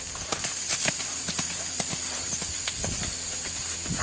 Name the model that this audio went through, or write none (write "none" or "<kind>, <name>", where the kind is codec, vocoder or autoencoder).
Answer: vocoder, BigVGAN v2